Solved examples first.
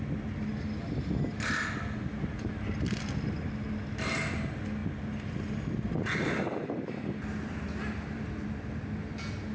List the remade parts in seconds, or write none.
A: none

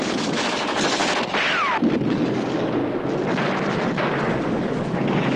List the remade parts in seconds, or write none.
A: 0.0-1.0; 2.1-2.8; 4.1-5.4